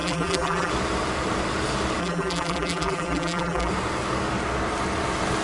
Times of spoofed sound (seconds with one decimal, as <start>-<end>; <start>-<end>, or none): 0.0-0.7; 2.0-3.7